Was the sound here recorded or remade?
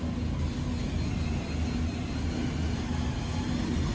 recorded